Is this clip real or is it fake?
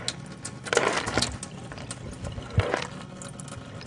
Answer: real